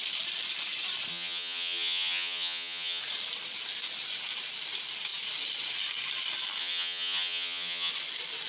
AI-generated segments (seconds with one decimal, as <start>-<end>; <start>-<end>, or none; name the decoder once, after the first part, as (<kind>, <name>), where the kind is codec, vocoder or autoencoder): 1.1-3.0 (vocoder, HiFi-GAN); 6.6-7.9